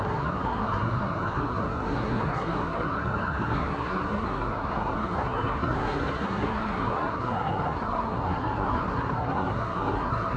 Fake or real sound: fake